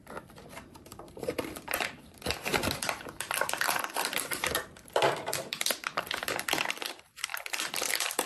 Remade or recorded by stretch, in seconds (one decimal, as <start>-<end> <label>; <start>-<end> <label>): 0.0-8.3 remade

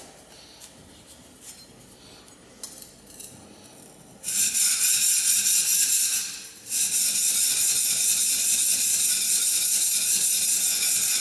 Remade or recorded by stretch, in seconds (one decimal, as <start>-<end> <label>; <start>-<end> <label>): 0.0-5.7 recorded; 5.7-9.4 remade; 9.4-11.2 recorded

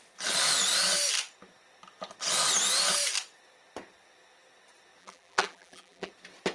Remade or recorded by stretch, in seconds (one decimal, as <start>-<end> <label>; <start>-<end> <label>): 0.0-5.0 recorded; 5.0-6.1 remade; 6.1-6.5 recorded

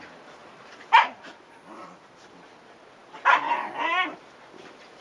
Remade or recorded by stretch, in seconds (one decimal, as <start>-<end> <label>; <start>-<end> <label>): 0.0-0.4 recorded; 0.4-1.5 remade; 1.5-5.0 recorded

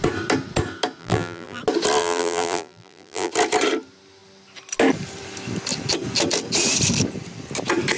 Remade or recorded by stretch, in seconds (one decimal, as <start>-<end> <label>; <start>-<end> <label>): 0.0-1.0 recorded; 1.0-1.6 remade; 1.6-2.0 recorded; 2.0-3.3 remade; 3.3-8.0 recorded

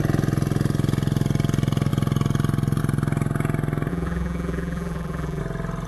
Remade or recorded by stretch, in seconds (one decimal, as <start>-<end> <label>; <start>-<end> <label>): 0.0-3.9 recorded; 3.9-5.4 remade; 5.4-5.9 recorded

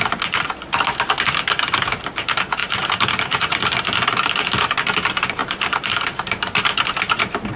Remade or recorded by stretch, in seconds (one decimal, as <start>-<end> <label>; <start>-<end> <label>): 0.0-5.4 recorded; 5.4-6.6 remade; 6.6-7.6 recorded

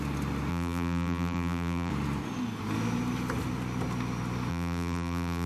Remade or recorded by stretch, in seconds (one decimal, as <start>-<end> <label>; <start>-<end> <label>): 0.0-0.5 recorded; 0.5-1.9 remade; 1.9-4.5 recorded; 4.5-5.5 remade